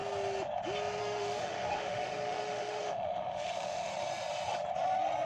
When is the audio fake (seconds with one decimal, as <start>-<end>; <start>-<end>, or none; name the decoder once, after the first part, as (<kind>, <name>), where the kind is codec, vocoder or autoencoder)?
1.0-3.9 (autoencoder, DAC-VAE)